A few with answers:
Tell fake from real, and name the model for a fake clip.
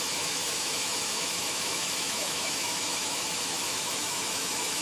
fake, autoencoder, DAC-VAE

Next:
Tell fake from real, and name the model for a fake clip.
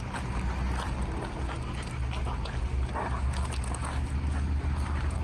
real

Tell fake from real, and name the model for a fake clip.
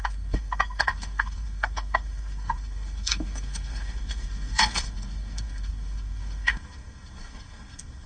fake, codec, SNAC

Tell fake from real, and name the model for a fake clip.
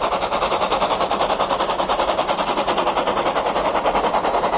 real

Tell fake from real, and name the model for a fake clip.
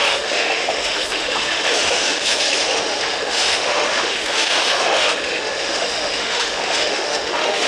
fake, autoencoder, DAC-VAE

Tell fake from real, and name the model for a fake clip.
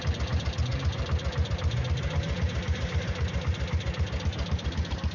real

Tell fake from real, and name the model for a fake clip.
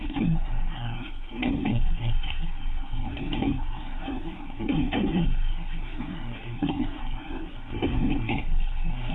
fake, codec, SNAC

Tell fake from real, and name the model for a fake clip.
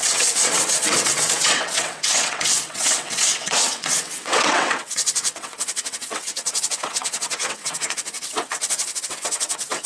fake, vocoder, WaveNeXt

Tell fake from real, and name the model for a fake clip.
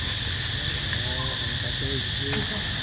real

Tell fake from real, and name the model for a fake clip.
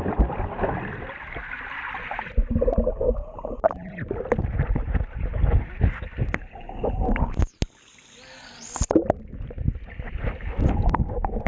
real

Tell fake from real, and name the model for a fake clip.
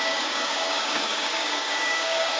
fake, codec, DAC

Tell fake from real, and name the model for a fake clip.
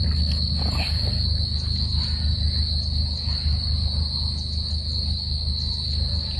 real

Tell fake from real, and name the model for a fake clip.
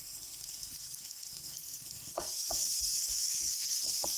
fake, codec, SNAC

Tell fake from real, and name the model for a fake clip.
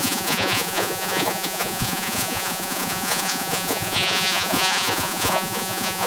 fake, vocoder, Vocos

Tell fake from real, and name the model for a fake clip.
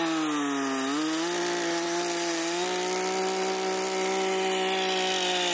real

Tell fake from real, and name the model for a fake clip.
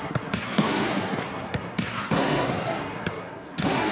fake, codec, SNAC